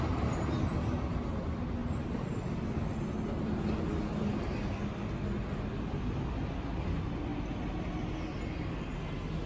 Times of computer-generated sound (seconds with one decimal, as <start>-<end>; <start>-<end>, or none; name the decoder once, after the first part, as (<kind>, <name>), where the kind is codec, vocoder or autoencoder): 1.8-4.3 (vocoder, BigVGAN v2)

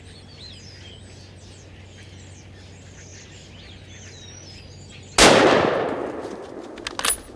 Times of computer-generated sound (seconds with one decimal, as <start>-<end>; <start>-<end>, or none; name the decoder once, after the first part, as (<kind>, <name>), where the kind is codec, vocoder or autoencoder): 6.0-6.8 (vocoder, BigVGAN v2)

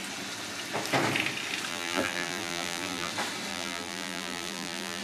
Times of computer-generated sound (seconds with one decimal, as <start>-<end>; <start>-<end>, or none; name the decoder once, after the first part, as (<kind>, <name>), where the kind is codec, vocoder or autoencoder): 1.7-3.1 (vocoder, BigVGAN v2); 3.5-5.0

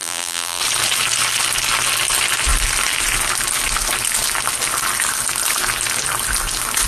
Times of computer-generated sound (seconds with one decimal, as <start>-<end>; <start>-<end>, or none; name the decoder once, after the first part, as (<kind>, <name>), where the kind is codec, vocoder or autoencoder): 0.0-0.6 (vocoder, BigVGAN v2)

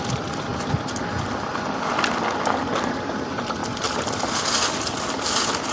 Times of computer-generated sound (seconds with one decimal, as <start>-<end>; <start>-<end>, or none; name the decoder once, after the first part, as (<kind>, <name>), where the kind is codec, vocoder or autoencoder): 3.6-4.4 (vocoder, BigVGAN v2)

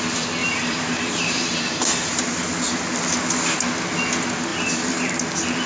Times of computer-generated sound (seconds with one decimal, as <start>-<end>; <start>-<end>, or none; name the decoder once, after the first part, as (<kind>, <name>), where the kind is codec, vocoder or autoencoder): 0.4-2.2 (vocoder, BigVGAN v2); 4.5-5.1

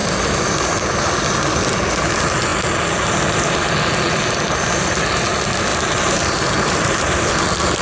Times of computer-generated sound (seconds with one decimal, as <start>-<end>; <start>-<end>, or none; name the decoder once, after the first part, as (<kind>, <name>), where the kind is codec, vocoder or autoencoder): 5.7-7.3 (vocoder, BigVGAN v2)

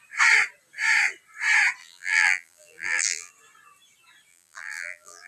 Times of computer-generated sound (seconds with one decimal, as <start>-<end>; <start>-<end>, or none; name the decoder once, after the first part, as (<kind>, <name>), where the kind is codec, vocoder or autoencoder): 1.8-3.3 (vocoder, BigVGAN v2); 4.3-5.3